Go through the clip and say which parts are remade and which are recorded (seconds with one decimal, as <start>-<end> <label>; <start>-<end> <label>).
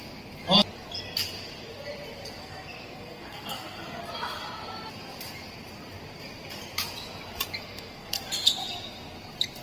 0.0-2.4 recorded; 2.4-4.0 remade; 4.0-7.6 recorded; 7.6-8.2 remade; 8.2-9.6 recorded